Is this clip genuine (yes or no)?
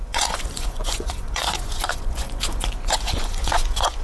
no